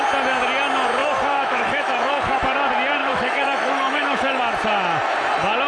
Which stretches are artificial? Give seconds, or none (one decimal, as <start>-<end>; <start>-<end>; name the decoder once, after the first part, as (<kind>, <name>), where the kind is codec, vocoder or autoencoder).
1.0-2.4 (autoencoder, DAC-VAE); 3.0-4.4